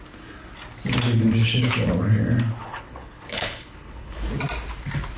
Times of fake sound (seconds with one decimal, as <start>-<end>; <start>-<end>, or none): 1.4-1.9; 2.6-4.2